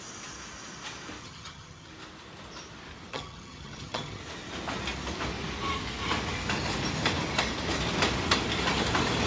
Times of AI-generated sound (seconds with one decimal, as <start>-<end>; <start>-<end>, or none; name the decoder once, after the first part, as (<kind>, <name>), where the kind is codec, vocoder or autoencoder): 1.2-1.9 (vocoder, HiFi-GAN); 3.1-4.2